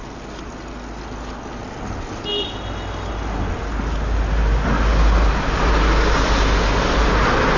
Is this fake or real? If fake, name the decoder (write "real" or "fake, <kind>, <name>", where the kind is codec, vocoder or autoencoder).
real